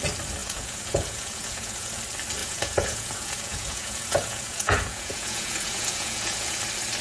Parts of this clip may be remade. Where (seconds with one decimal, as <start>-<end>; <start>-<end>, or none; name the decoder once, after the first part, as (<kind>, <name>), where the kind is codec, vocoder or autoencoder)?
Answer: 0.4-2.0 (vocoder, Vocos); 2.4-6.6